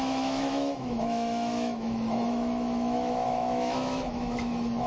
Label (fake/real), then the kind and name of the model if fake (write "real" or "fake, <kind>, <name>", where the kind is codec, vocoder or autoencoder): fake, autoencoder, DAC-VAE